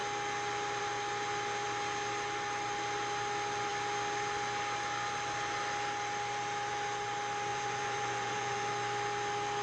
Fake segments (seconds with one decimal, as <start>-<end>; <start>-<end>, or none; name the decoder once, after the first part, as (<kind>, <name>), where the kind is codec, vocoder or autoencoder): 7.5-8.7 (vocoder, Vocos)